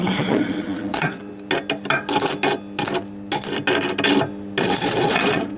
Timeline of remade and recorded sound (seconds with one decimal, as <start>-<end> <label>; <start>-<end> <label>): 0.0-1.2 remade; 1.2-4.6 recorded; 4.6-5.6 remade